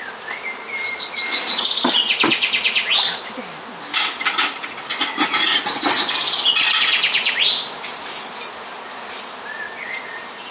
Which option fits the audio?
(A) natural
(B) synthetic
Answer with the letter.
A